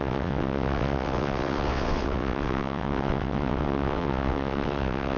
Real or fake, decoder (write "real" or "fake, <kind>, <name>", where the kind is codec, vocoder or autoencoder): fake, vocoder, WaveNeXt